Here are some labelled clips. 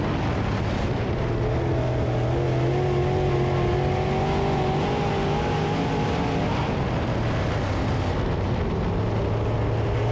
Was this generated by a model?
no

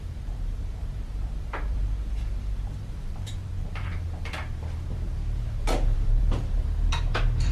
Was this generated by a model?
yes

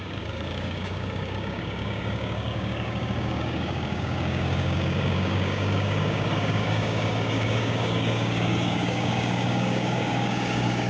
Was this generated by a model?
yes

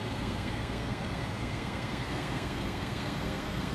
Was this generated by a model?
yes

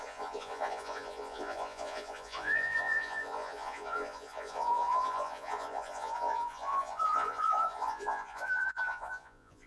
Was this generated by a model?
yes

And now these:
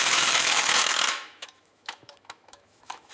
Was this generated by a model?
yes